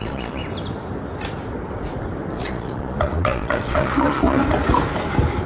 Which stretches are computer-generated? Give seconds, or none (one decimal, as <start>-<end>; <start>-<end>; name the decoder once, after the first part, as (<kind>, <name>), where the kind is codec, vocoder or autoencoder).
0.0-0.4 (vocoder, Vocos); 2.3-4.4